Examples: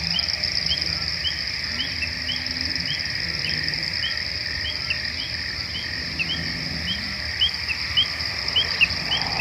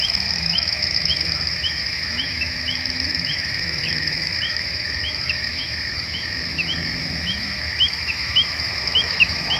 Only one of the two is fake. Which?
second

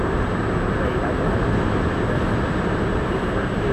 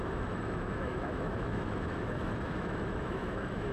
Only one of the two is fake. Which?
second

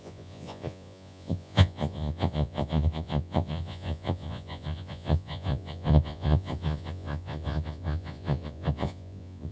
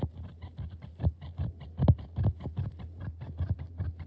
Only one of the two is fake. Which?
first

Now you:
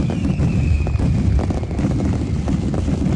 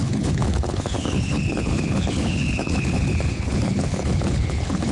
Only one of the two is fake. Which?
second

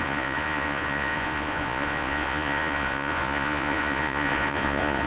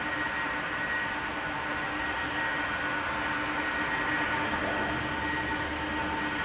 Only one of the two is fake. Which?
first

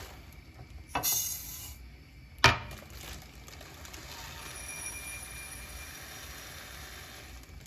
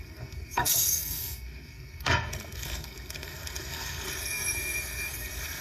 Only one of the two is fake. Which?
second